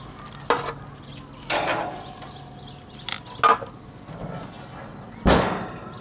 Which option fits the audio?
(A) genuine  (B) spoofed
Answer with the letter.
A